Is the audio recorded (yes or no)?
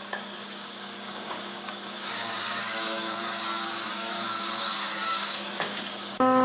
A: no